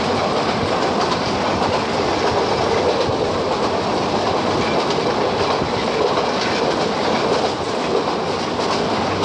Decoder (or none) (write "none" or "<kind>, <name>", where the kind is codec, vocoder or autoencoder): none